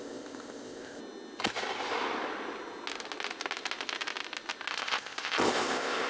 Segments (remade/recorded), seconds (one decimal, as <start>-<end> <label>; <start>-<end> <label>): 0.0-1.0 remade; 1.0-4.7 recorded; 4.7-6.1 remade